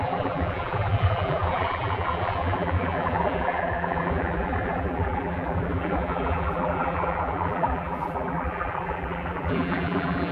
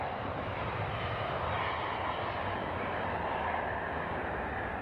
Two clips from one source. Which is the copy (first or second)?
first